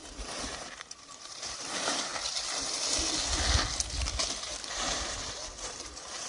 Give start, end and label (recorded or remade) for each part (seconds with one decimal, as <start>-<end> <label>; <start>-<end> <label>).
0.0-2.1 remade; 2.1-4.7 recorded; 4.7-6.3 remade